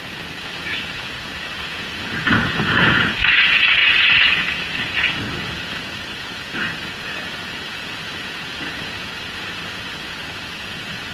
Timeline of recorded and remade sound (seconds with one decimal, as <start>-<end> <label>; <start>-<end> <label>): 0.0-11.1 remade